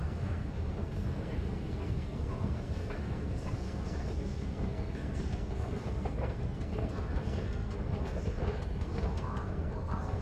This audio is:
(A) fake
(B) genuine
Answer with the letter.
A